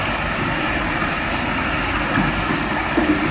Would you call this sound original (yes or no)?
yes